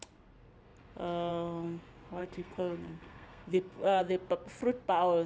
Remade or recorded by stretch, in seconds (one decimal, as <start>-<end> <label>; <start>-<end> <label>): 0.0-2.2 recorded; 2.2-4.0 remade; 4.0-5.3 recorded